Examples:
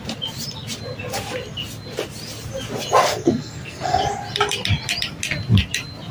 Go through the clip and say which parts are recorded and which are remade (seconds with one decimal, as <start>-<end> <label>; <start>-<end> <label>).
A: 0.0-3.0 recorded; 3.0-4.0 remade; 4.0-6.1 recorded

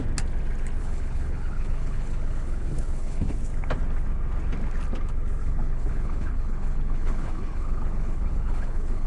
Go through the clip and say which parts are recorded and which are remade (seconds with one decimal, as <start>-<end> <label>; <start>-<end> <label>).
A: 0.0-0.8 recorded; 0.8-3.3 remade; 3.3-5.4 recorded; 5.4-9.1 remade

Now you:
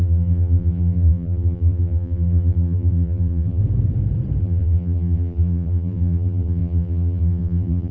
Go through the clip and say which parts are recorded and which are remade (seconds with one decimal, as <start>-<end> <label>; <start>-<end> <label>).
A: 0.0-3.6 remade; 3.6-4.4 recorded; 4.4-7.9 remade

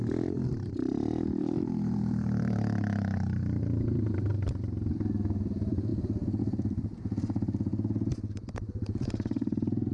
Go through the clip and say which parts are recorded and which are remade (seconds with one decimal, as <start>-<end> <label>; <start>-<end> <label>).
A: 0.0-4.3 remade; 4.3-5.5 recorded; 5.5-5.9 remade; 5.9-6.4 recorded; 6.4-7.7 remade; 7.7-8.7 recorded; 8.7-9.9 remade

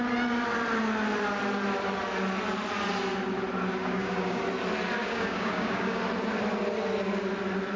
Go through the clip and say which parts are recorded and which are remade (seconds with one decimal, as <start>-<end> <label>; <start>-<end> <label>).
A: 0.0-3.8 recorded; 3.8-4.4 remade; 4.4-5.0 recorded; 5.0-6.0 remade; 6.0-7.8 recorded